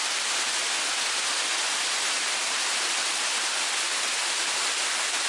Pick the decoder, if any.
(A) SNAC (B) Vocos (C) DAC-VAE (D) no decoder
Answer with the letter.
D